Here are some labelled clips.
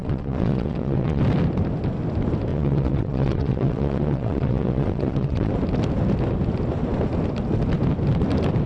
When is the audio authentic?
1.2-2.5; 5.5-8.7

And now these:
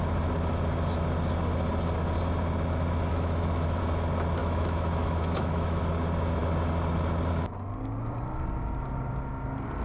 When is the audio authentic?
0.0-3.1; 3.8-4.4; 5.8-9.8

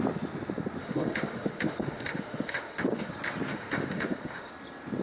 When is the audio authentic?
0.0-0.8; 3.1-3.5; 4.5-5.0

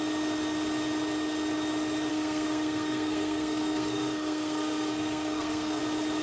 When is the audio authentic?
0.0-2.1; 5.8-6.2

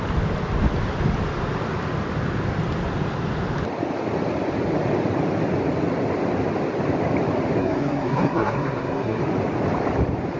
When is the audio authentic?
0.0-7.6; 9.2-10.4

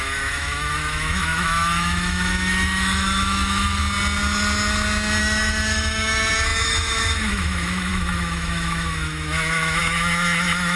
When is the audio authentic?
3.8-5.2

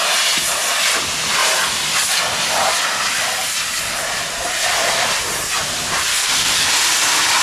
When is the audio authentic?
0.0-6.1; 6.7-7.4

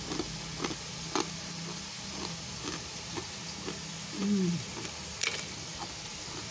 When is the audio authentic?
0.0-6.5